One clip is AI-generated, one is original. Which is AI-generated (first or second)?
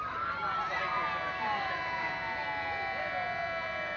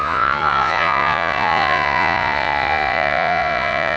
second